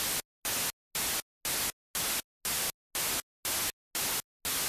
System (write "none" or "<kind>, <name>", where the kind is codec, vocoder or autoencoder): none